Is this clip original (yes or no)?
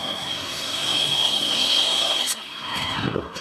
no